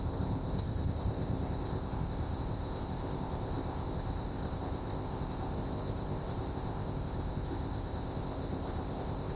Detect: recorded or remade remade